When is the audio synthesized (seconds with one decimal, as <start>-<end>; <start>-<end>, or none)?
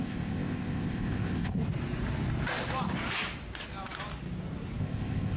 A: 0.0-1.6; 4.8-5.4